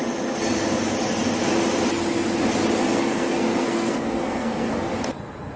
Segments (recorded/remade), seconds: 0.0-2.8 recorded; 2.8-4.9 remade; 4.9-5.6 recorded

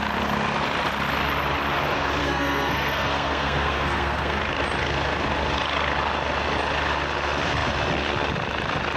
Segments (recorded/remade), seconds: 0.0-2.2 recorded; 2.2-4.4 remade; 4.4-9.0 recorded

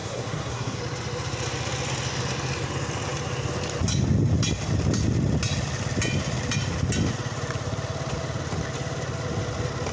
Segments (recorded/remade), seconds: 0.0-0.8 remade; 0.8-9.9 recorded